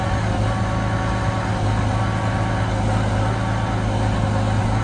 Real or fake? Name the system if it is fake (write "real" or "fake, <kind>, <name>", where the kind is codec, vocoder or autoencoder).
real